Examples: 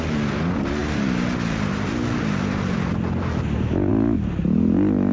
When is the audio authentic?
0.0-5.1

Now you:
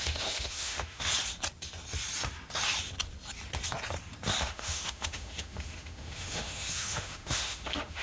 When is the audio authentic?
1.1-4.4

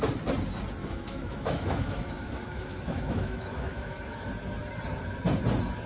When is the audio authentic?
0.0-0.8; 4.3-5.9

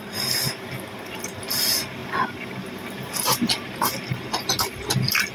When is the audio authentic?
0.0-5.3

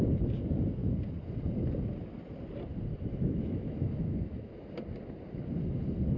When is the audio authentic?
0.0-2.9; 4.5-6.2

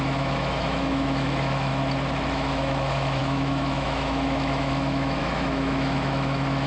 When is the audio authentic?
1.7-2.3